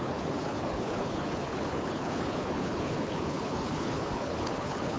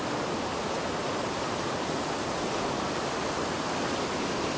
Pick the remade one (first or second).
first